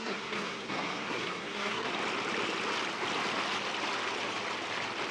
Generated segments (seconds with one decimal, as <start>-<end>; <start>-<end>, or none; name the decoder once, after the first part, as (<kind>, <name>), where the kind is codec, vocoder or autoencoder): 0.0-1.9 (codec, SNAC)